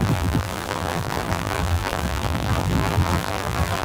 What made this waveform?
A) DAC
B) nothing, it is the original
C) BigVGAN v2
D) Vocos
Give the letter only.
C